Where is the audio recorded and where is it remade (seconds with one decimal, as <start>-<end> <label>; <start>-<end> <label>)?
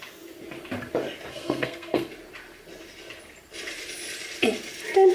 0.0-1.3 recorded; 1.3-2.1 remade; 2.1-5.1 recorded